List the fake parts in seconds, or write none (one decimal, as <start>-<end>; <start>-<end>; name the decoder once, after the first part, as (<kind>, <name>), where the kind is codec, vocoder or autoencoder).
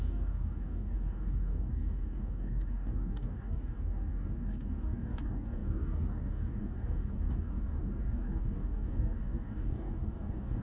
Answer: 0.0-10.6 (codec, DAC)